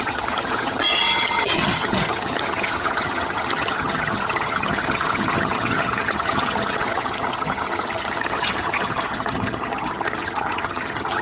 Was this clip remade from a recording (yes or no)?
yes